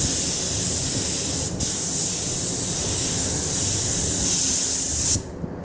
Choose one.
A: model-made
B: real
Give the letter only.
B